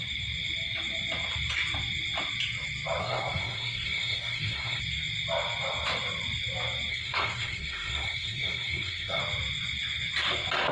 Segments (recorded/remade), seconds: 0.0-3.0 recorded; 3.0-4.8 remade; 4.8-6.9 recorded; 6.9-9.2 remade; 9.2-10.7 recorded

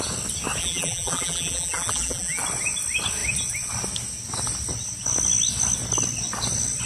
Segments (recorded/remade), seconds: 0.0-0.6 recorded; 0.6-2.4 remade; 2.4-6.9 recorded